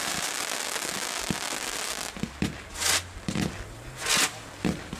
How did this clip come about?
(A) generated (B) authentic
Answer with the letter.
B